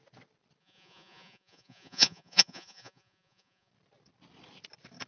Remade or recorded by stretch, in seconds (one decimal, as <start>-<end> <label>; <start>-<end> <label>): 0.0-0.6 recorded; 0.6-3.7 remade; 3.7-5.1 recorded